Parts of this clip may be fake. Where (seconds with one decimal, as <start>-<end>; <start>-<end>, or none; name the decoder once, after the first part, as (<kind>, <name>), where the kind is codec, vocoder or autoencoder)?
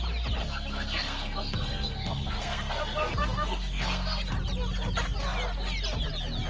0.4-4.3 (codec, SNAC)